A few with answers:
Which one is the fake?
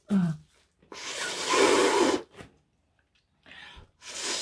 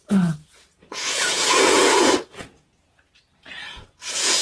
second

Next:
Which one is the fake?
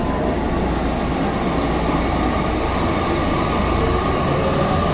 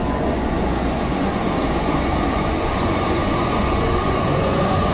second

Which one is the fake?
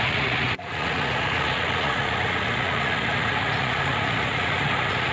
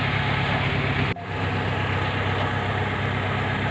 first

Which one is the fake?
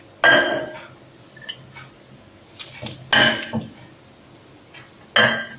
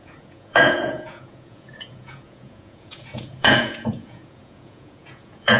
second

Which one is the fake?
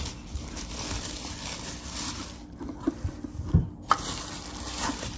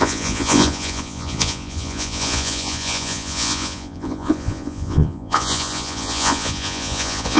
second